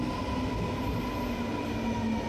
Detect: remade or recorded recorded